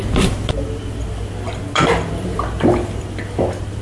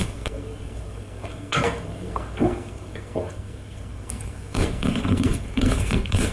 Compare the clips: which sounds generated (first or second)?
second